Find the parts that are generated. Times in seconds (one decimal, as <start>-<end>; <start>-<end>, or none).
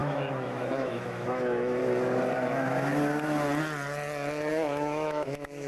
0.0-1.8; 4.5-5.7